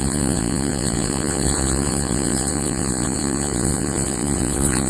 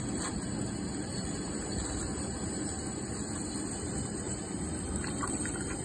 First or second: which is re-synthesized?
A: first